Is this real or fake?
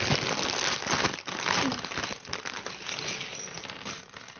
real